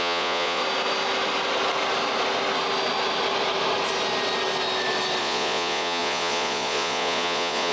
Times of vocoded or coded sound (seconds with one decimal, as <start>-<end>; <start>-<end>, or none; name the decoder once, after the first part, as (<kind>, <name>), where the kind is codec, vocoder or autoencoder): 0.0-0.6 (vocoder, Vocos); 5.2-7.7

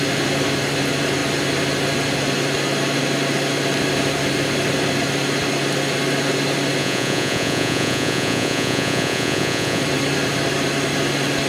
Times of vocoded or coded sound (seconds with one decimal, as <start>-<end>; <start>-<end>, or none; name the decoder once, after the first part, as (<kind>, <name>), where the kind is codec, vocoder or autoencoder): 6.8-9.8 (vocoder, Vocos)